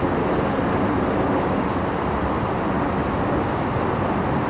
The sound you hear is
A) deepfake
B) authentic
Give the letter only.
B